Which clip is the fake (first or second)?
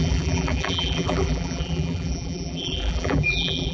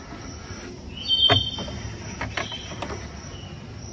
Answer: first